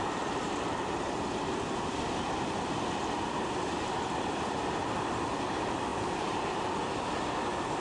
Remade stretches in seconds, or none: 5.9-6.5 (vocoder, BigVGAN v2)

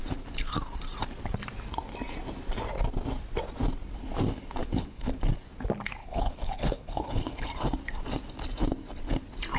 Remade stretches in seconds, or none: 4.6-5.2 (codec, HILCodec); 6.0-7.5

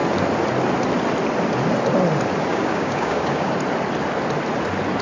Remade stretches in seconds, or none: 2.5-3.5 (codec, DAC)

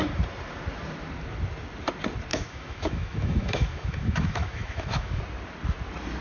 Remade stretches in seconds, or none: 2.3-5.2 (autoencoder, DAC-VAE)